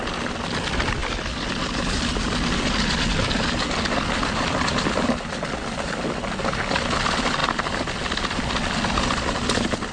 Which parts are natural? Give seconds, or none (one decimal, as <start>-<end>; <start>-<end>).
0.0-9.9